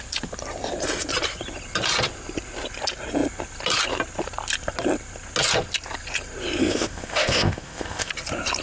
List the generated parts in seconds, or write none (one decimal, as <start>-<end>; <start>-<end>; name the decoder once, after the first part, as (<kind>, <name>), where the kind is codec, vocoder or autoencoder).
6.6-8.1 (codec, ZipCodec)